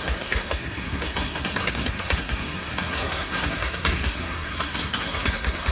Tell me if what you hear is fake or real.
fake